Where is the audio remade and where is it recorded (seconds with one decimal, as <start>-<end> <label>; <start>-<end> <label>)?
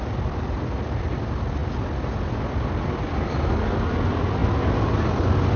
0.0-5.6 recorded